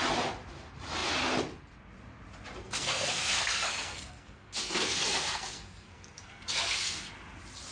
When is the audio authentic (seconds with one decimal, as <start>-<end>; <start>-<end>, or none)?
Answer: 0.0-2.6; 7.1-7.7